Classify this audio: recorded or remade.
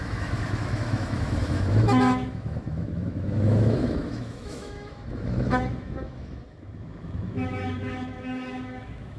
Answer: remade